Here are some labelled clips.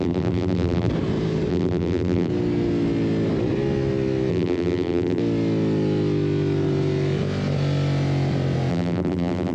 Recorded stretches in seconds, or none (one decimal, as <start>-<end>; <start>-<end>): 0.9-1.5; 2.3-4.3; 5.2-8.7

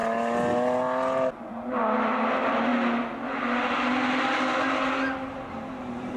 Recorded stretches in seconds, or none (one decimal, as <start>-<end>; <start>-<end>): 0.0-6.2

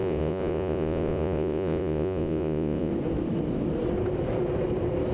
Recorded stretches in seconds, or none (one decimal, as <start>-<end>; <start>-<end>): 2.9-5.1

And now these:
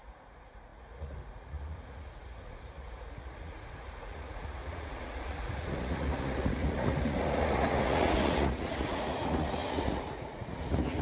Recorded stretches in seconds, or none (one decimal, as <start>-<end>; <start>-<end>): none

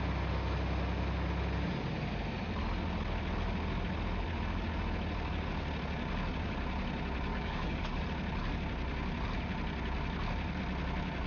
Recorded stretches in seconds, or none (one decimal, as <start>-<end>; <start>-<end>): 0.0-7.3; 8.0-11.3

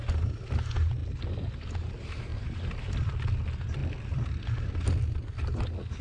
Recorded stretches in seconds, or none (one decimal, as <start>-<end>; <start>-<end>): 0.0-2.3; 3.1-6.0